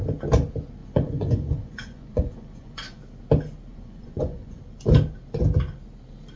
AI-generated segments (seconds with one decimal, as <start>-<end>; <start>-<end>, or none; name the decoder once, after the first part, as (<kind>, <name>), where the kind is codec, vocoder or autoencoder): 0.8-3.0 (vocoder, Vocos); 3.7-4.6